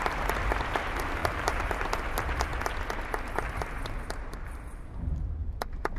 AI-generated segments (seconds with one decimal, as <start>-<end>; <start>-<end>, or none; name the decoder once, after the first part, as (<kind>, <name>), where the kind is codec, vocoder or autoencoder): 1.2-1.9 (vocoder, BigVGAN v2)